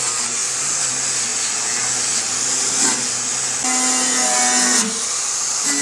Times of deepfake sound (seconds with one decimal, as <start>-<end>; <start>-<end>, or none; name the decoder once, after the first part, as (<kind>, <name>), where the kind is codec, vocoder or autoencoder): none